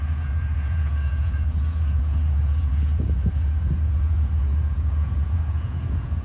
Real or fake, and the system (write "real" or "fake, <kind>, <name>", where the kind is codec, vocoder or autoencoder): fake, vocoder, Vocos